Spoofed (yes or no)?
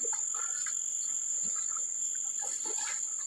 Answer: no